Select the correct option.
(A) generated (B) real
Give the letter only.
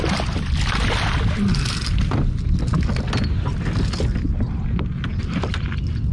B